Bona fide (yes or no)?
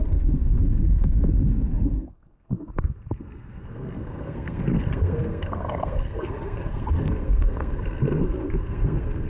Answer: no